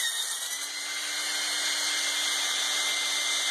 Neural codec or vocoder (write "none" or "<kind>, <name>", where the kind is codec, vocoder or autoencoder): none